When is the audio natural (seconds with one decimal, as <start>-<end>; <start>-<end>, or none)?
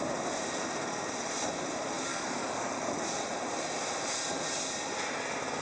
0.0-2.1; 2.9-5.6